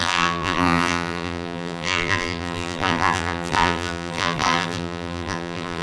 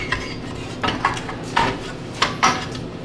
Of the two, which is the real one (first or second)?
second